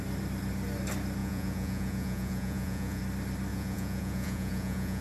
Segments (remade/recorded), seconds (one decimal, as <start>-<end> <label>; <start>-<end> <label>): 0.0-1.2 recorded; 1.2-3.0 remade; 3.0-3.5 recorded; 3.5-5.0 remade